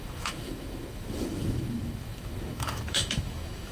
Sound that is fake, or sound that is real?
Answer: fake